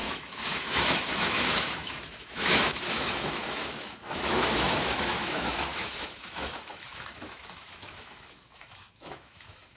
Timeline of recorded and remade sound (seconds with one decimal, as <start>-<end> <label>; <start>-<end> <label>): 0.0-9.8 remade